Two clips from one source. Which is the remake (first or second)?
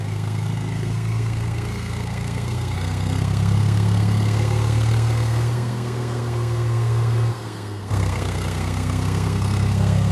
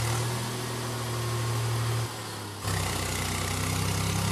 first